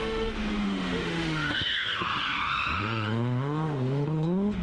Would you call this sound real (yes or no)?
no